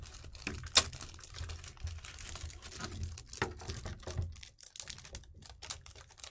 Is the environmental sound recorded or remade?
recorded